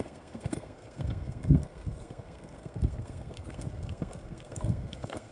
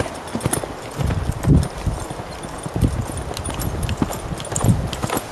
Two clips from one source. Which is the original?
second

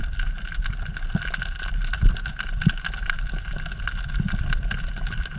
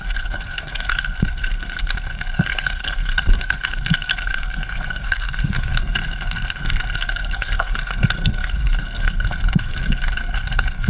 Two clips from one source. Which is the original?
first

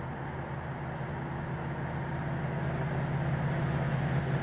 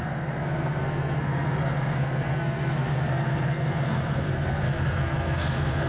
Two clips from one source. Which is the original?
first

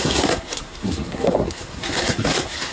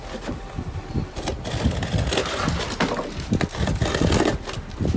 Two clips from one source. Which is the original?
second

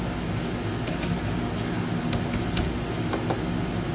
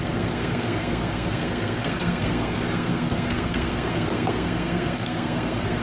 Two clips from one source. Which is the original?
first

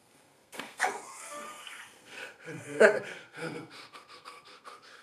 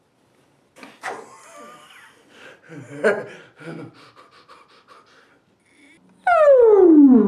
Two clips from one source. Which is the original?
second